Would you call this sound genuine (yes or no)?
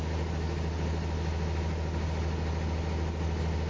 yes